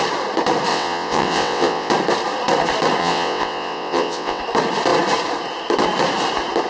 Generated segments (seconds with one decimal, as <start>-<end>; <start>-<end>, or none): 0.7-1.9; 3.0-4.4